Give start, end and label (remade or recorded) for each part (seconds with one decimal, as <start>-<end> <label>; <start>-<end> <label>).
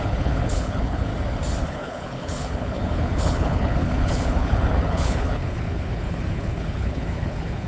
0.0-1.1 remade; 1.1-1.7 recorded; 1.7-7.7 remade